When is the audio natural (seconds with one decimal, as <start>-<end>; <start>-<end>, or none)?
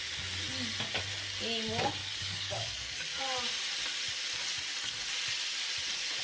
0.0-2.0; 3.2-6.2